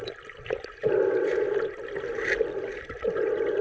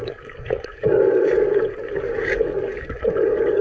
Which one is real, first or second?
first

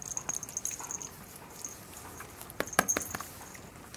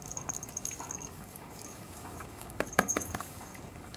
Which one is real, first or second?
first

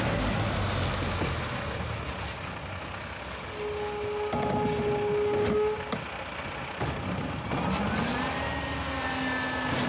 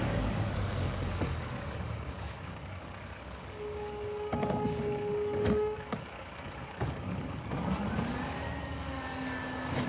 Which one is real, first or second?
first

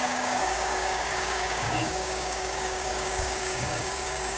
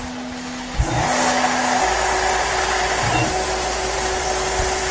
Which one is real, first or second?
second